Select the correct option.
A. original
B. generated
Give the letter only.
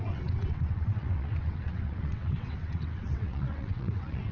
B